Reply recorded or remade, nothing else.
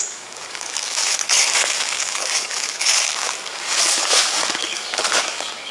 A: remade